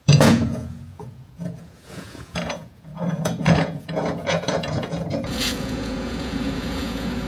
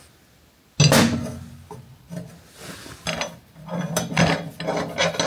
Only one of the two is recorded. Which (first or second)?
second